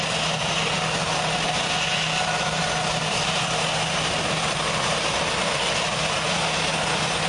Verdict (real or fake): real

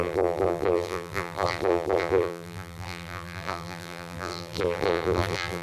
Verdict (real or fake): fake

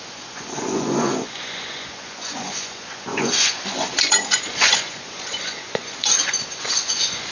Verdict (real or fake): fake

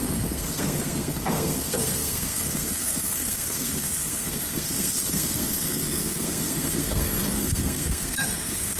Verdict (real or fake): fake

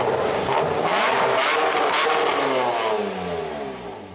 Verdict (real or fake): real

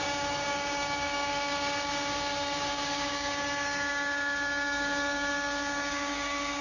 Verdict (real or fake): fake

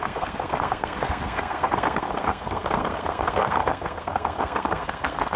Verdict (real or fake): fake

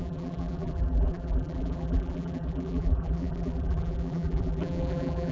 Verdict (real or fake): fake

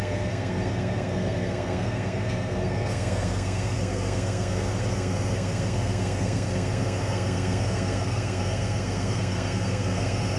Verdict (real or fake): fake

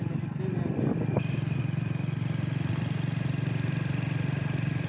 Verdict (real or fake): real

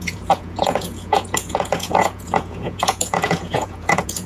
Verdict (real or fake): fake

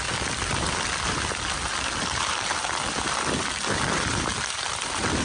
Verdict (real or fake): fake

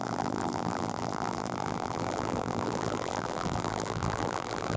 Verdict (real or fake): fake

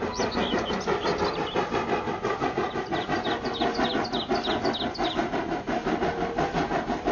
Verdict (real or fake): real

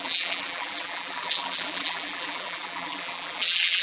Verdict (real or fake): fake